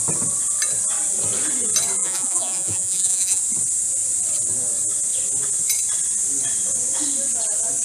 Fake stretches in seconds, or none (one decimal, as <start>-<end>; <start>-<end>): 2.0-3.4